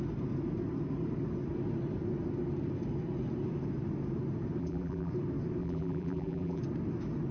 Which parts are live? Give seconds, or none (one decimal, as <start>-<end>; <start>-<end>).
0.0-4.6; 5.1-5.6; 6.6-7.3